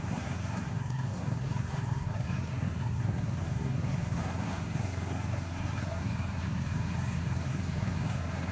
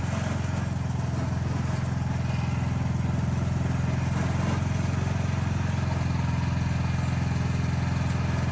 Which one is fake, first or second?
first